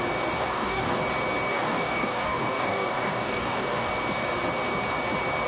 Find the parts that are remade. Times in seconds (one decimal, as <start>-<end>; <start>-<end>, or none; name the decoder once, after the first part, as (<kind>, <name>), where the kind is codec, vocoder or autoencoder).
0.4-1.0 (codec, DAC); 1.5-3.9